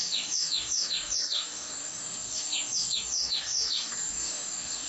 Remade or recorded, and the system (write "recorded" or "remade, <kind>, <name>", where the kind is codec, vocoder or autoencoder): remade, codec, DAC